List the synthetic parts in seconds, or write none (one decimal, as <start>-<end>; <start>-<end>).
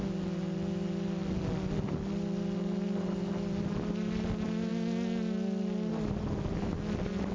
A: none